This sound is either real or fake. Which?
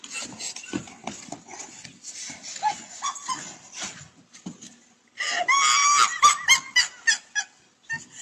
real